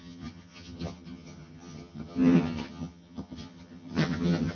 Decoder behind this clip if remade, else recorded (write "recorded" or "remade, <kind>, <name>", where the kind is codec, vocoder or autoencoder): remade, vocoder, HiFi-GAN